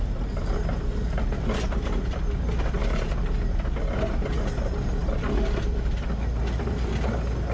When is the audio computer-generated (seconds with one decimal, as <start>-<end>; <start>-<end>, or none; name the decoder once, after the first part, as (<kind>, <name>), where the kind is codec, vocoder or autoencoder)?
none